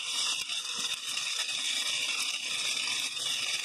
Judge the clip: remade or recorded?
remade